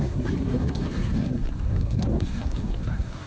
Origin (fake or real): fake